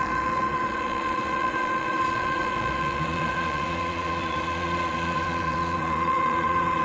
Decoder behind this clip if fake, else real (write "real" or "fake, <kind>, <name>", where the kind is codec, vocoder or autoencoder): fake, vocoder, Vocos